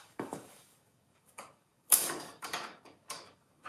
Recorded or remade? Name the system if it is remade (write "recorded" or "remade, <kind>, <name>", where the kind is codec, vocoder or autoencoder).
remade, codec, DAC